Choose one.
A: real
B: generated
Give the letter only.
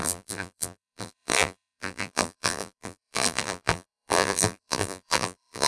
B